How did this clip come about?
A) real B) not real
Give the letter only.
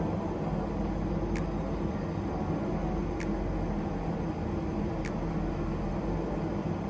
A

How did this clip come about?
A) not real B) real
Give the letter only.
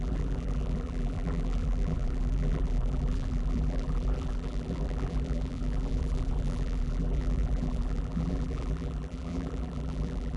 A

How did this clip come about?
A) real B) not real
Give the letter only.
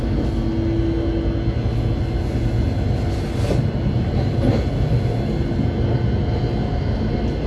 A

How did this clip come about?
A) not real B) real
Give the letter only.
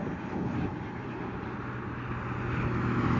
B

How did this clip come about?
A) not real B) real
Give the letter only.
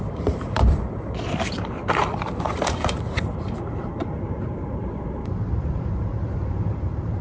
A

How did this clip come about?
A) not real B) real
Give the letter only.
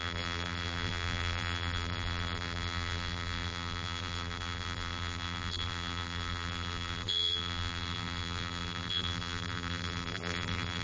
A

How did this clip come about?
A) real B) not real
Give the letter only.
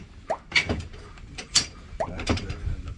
B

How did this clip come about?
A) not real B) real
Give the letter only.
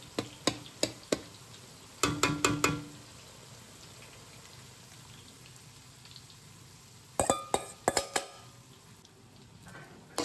B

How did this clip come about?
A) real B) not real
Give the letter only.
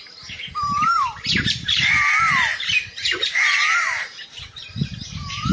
B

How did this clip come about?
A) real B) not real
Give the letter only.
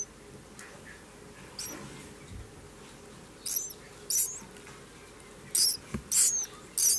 A